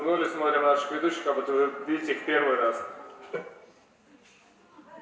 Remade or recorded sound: recorded